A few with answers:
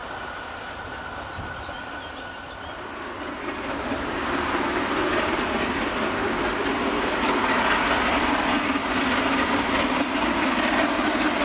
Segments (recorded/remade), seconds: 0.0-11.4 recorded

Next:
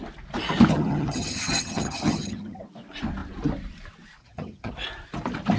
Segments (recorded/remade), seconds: 0.0-0.7 recorded; 0.7-2.6 remade; 2.6-4.2 recorded; 4.2-4.7 remade; 4.7-5.6 recorded

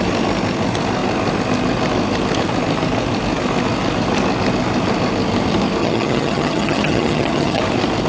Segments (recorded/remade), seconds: 0.0-5.8 recorded; 5.8-7.6 remade; 7.6-8.1 recorded

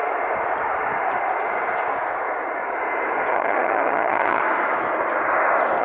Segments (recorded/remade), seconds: 0.0-3.3 recorded; 3.3-4.4 remade; 4.4-5.8 recorded

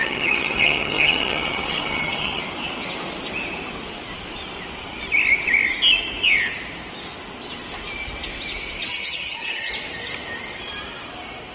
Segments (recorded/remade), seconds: 0.0-2.4 remade; 2.4-8.9 recorded; 8.9-9.7 remade; 9.7-11.5 recorded